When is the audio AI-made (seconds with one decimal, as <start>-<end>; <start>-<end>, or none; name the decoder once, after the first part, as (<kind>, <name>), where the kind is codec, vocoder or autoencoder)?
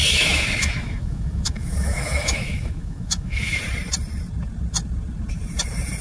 0.0-3.6 (autoencoder, DAC-VAE)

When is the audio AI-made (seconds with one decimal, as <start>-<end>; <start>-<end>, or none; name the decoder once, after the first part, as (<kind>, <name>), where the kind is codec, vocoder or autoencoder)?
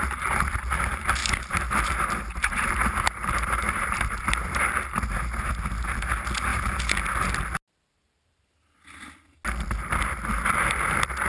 1.2-4.7 (vocoder, BigVGAN v2); 6.5-7.0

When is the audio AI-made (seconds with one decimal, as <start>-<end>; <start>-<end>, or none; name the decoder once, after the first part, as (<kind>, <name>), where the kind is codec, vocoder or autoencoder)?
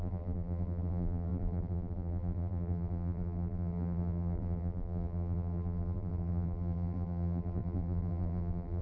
0.0-8.8 (vocoder, BigVGAN v2)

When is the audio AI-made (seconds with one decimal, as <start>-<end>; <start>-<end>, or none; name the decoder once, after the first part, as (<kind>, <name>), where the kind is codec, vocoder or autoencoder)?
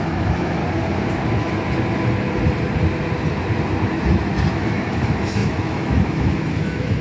0.0-0.6 (autoencoder, DAC-VAE); 4.5-7.0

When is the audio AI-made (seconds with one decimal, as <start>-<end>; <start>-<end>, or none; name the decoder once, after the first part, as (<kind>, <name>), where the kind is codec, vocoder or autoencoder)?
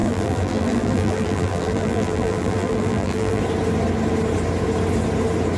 0.0-3.4 (vocoder, BigVGAN v2)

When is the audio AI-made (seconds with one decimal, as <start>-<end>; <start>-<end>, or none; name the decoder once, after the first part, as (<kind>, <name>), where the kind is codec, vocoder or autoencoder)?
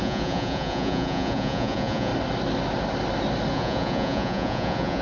0.0-2.1 (vocoder, Vocos); 3.5-5.0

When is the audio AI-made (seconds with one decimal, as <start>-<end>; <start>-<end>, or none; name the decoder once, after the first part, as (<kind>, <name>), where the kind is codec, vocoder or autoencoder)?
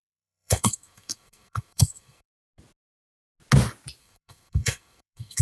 0.0-2.3 (codec, SNAC); 4.0-5.4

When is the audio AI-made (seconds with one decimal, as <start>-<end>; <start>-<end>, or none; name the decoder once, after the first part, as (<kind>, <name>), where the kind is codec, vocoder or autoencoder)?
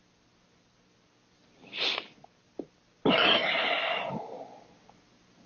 none